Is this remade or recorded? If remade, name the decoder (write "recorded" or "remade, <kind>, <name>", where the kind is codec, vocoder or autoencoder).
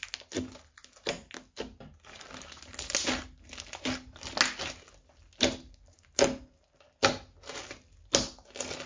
recorded